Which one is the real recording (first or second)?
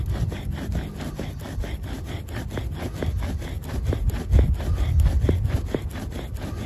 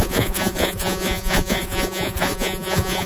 first